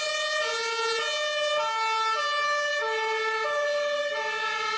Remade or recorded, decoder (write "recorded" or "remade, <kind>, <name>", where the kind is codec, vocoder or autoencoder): recorded